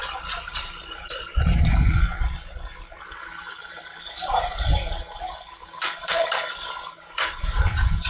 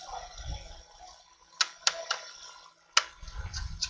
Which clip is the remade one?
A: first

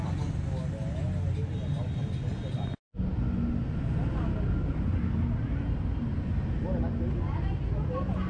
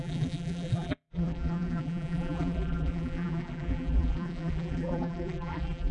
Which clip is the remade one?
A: second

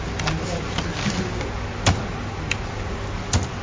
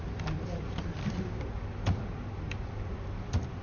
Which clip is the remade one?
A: second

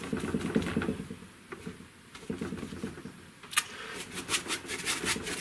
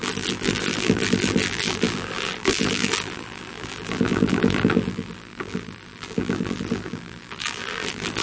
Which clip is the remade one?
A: second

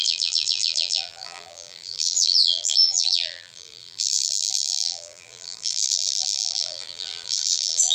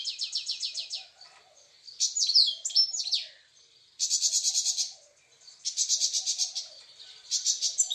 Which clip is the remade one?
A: first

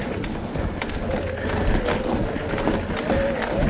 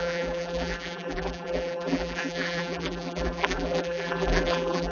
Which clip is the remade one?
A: second